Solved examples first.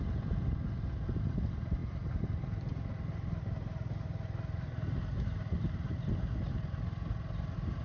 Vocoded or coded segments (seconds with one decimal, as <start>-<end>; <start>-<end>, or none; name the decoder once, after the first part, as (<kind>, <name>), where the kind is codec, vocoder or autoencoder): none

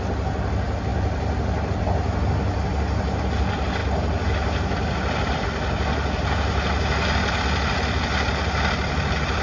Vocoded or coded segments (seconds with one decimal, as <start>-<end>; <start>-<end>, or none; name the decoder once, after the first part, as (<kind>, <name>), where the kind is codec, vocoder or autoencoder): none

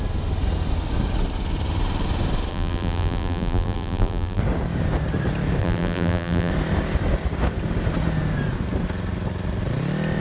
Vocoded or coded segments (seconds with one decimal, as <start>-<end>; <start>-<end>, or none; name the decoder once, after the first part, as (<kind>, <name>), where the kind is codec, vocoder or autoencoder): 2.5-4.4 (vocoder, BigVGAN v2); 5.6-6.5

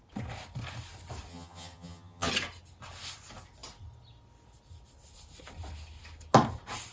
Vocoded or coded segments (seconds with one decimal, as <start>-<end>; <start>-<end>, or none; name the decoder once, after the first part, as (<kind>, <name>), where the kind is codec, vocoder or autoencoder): 1.3-2.3 (vocoder, HiFi-GAN)